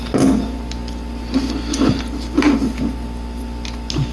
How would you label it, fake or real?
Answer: real